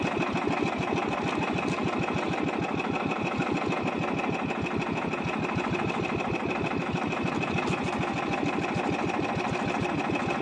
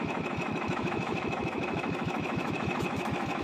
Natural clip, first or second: first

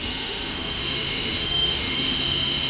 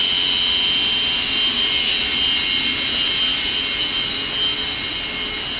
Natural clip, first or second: second